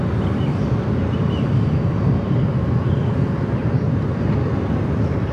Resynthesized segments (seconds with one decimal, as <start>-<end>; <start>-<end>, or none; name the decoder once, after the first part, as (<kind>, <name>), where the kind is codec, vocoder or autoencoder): 3.6-4.3 (vocoder, BigVGAN v2)